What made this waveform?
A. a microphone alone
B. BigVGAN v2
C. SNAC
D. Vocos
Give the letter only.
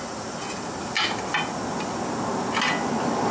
A